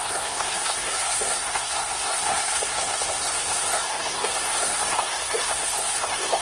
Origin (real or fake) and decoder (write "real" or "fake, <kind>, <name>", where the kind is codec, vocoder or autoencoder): fake, codec, SNAC